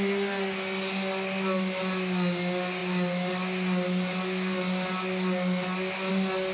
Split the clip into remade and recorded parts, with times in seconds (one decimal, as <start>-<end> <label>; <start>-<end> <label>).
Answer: 0.0-6.5 recorded

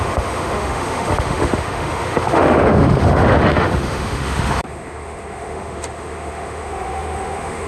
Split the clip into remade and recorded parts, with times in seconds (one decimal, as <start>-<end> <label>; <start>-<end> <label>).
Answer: 0.0-7.7 remade